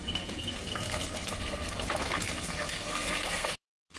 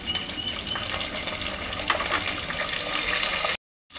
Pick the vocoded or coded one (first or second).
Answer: first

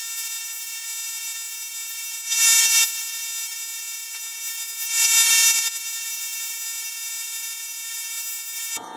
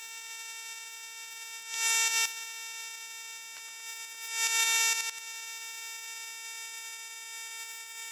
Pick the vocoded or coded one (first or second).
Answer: first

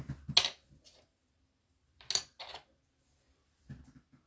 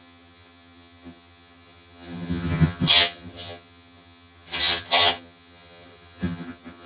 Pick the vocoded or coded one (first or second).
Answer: second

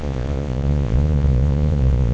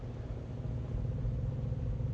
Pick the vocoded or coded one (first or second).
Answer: first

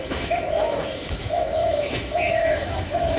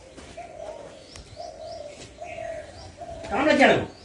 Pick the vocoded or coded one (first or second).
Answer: first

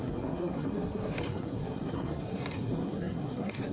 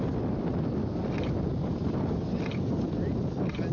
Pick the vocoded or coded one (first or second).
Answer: first